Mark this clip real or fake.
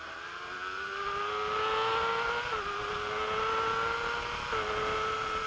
real